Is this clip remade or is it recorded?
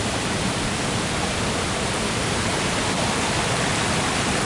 recorded